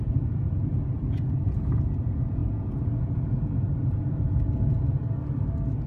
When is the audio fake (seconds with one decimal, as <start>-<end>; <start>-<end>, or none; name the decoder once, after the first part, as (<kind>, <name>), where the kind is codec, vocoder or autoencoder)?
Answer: 0.0-5.0 (vocoder, Vocos)